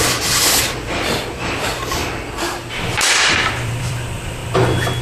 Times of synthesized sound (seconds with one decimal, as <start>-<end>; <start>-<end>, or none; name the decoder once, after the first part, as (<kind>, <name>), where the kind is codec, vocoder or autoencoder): 0.0-2.0 (vocoder, BigVGAN v2); 2.7-4.4